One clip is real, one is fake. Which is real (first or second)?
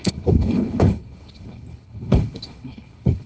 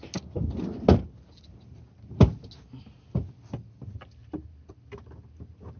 second